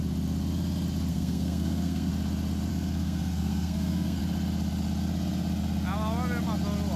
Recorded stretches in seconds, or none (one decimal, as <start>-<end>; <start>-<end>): 0.0-1.1; 2.1-2.7; 4.2-7.0